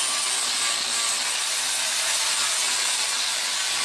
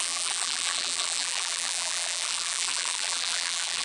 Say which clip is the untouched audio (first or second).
first